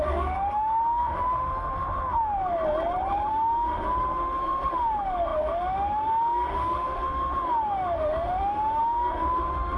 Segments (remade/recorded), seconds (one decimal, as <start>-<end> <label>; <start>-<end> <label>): 0.0-2.6 remade; 2.6-3.3 recorded; 3.3-9.8 remade